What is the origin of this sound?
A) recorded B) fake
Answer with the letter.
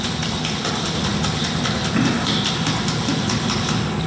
A